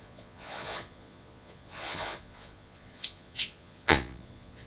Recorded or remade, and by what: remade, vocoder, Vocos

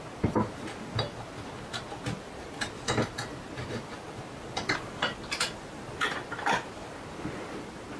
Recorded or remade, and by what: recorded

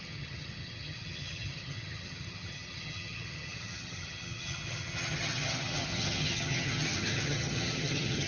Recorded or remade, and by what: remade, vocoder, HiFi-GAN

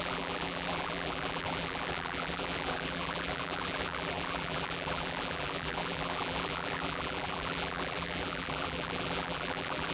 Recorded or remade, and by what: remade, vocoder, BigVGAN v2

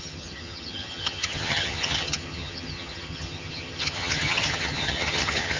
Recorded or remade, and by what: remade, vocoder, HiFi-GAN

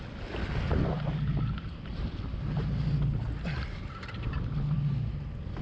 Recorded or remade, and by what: recorded